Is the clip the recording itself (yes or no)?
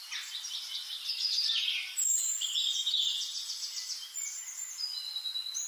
yes